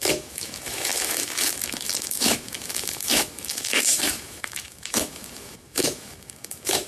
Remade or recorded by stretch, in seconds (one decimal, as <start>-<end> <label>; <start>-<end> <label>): 0.0-6.9 remade